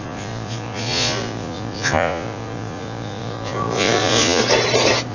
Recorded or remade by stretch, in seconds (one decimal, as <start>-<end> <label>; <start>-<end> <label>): 0.0-4.4 remade; 4.4-5.1 recorded